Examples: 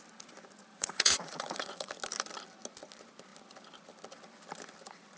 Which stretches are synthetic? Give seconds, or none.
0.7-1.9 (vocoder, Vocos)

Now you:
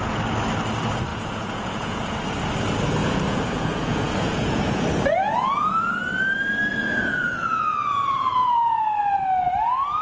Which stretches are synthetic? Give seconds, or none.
1.1-2.2 (vocoder, Vocos); 3.0-4.8; 5.2-6.0; 6.8-8.8